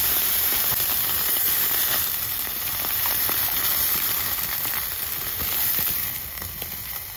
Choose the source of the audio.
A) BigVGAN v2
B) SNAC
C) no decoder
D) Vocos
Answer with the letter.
A